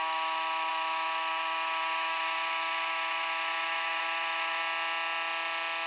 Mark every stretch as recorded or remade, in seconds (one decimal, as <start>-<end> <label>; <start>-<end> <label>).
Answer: 0.0-4.6 remade; 4.6-5.9 recorded